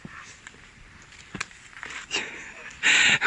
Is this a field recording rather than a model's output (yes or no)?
yes